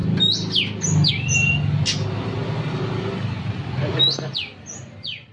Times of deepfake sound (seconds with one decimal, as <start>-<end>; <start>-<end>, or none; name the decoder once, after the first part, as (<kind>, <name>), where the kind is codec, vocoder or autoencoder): none